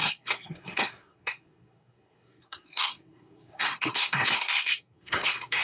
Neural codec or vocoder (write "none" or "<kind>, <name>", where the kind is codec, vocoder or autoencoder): codec, SNAC